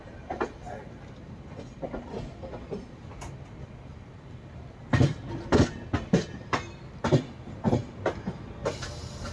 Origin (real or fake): real